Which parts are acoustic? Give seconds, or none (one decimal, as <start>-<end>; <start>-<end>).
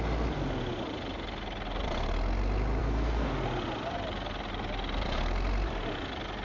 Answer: 0.0-2.8; 3.3-6.4